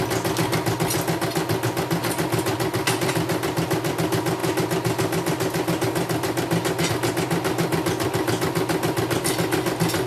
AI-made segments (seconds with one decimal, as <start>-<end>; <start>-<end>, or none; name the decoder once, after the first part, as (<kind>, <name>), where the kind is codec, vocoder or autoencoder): none